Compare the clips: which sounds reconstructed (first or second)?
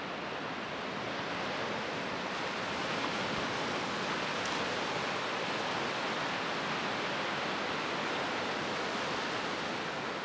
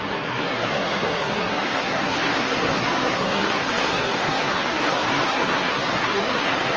second